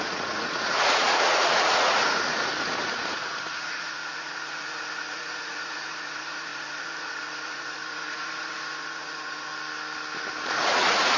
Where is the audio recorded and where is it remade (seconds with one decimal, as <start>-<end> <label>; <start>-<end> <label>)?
0.0-9.5 remade; 9.5-10.5 recorded; 10.5-11.2 remade